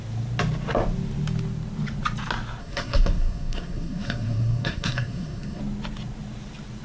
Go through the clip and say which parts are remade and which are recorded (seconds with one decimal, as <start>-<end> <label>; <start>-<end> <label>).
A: 0.0-2.6 recorded; 2.6-5.6 remade; 5.6-6.8 recorded